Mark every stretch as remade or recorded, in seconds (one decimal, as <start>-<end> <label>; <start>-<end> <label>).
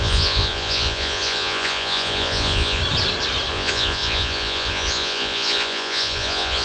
0.0-2.8 remade; 2.8-3.5 recorded; 3.5-6.6 remade